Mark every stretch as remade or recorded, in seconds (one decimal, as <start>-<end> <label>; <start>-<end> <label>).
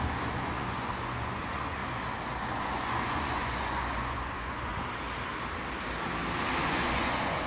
0.0-1.8 remade; 1.8-2.5 recorded; 2.5-4.7 remade; 4.7-6.6 recorded; 6.6-7.5 remade